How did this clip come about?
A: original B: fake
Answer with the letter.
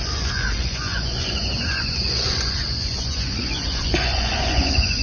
B